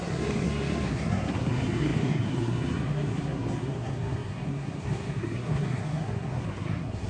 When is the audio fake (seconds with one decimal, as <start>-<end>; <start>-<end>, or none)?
0.0-7.1